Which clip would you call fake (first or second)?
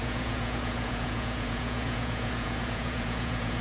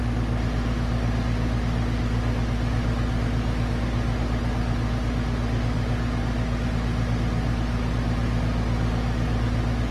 first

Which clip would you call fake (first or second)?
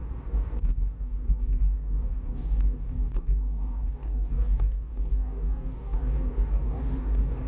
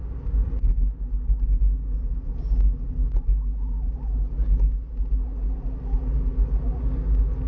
first